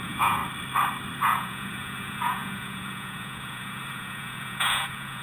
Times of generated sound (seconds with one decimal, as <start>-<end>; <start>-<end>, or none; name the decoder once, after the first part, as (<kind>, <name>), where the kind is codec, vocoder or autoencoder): 0.0-0.4 (vocoder, Vocos); 1.2-5.2

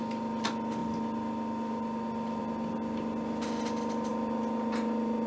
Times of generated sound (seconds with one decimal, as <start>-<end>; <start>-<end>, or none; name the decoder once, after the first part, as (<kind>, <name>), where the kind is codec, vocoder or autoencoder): none

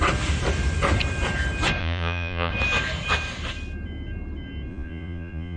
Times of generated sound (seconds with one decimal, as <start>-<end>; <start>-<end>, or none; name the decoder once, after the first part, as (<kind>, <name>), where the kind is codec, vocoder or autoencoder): 1.8-2.5 (vocoder, Vocos); 4.7-5.6